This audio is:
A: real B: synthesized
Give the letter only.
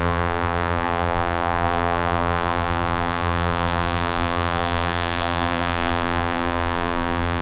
B